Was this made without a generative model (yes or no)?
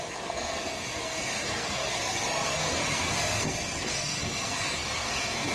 no